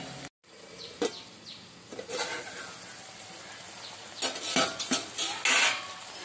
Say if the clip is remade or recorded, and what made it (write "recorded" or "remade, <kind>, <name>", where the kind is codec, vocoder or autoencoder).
recorded